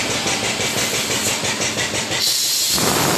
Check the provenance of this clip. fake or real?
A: real